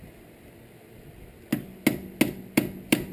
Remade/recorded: recorded